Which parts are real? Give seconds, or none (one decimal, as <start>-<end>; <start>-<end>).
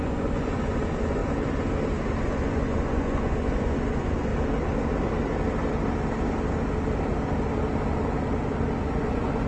1.2-2.2; 4.3-8.8